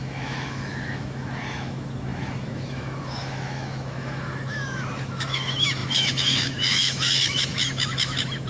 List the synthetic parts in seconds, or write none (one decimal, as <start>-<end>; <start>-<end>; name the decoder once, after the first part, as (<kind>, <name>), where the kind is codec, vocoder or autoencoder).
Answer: 0.0-8.5 (autoencoder, DAC-VAE)